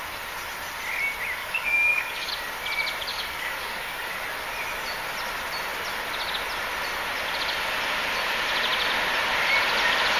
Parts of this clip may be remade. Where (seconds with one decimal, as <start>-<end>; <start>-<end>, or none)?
1.4-2.3; 3.1-4.1